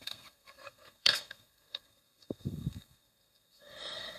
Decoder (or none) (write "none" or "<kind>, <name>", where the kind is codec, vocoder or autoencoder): codec, SNAC